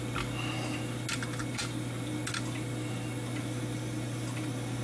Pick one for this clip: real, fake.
real